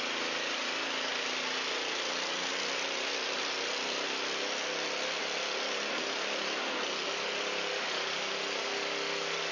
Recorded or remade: recorded